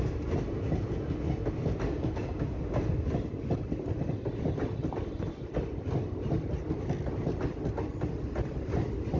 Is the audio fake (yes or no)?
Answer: no